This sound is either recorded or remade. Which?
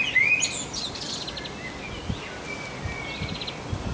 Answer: recorded